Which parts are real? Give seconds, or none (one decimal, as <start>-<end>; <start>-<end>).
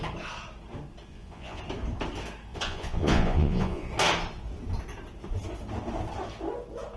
0.0-1.1; 1.6-2.5; 3.9-7.0